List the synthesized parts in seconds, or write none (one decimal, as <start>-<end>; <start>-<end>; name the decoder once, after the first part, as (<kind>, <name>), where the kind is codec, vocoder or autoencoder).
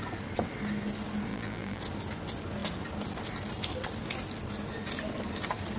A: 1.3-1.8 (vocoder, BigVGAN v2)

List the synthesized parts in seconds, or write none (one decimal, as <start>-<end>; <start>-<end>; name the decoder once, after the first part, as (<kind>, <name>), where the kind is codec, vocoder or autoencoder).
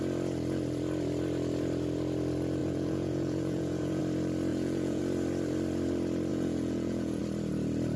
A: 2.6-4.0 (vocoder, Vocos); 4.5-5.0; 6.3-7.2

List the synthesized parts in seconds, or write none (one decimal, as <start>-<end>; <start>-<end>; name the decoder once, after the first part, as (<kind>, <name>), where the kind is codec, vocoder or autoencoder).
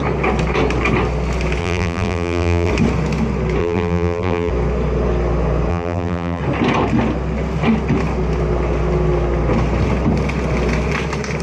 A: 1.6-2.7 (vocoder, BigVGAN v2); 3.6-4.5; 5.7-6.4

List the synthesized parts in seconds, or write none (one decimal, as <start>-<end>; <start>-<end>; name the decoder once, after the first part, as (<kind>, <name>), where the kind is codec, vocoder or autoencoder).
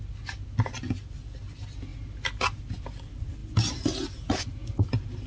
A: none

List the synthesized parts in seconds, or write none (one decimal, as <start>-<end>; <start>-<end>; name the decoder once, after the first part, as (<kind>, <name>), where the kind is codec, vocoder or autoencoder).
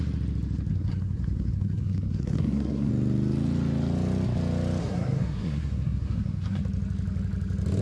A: 0.7-2.9 (codec, SNAC); 4.8-6.6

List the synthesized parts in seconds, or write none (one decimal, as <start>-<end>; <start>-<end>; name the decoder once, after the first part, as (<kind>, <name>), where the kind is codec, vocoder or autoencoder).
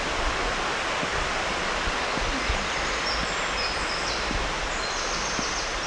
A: 1.1-2.2 (vocoder, BigVGAN v2)